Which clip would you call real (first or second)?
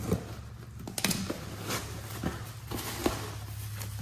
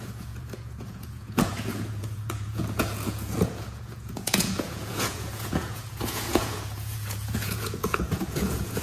first